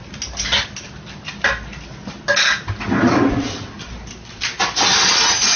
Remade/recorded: recorded